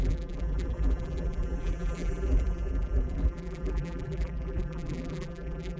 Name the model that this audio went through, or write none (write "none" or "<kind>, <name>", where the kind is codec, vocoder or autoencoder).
vocoder, BigVGAN v2